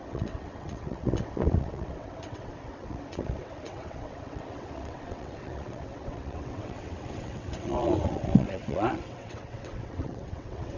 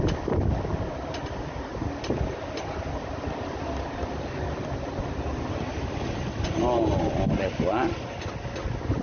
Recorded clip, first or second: second